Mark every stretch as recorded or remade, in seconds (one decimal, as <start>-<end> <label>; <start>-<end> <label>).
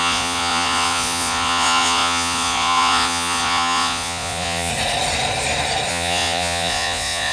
0.0-4.7 remade; 4.7-5.9 recorded; 5.9-7.3 remade